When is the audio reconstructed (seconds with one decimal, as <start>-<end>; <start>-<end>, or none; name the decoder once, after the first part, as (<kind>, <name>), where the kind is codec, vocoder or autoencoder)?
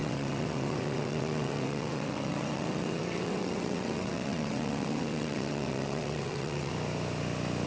0.0-6.7 (vocoder, WaveNeXt)